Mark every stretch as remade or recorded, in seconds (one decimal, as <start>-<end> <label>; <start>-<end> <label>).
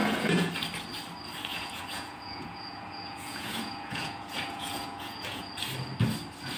0.0-0.5 remade; 0.5-1.5 recorded; 1.5-5.5 remade; 5.5-6.6 recorded